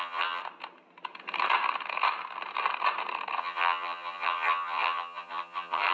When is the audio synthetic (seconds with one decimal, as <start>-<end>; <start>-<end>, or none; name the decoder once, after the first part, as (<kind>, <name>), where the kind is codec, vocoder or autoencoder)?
0.0-0.4 (vocoder, HiFi-GAN); 3.4-5.9